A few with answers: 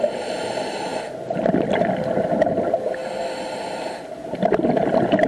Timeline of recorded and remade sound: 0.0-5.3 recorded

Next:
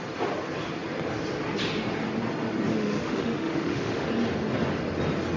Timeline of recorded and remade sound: 0.0-2.7 recorded; 2.7-4.1 remade; 4.1-5.4 recorded

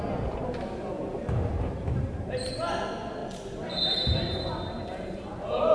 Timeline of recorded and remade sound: 0.0-0.4 recorded; 0.4-2.6 remade; 2.6-5.7 recorded

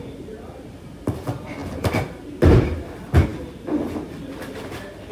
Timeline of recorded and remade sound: 0.0-5.1 recorded